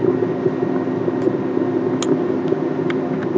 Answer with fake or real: real